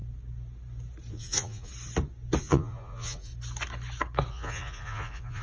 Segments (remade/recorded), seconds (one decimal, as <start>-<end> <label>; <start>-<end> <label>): 0.0-1.1 recorded; 1.1-1.7 remade; 1.7-2.4 recorded; 2.4-3.3 remade; 3.3-4.3 recorded; 4.3-5.4 remade